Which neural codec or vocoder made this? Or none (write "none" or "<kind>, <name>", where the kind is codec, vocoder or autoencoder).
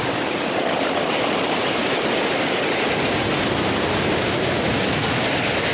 none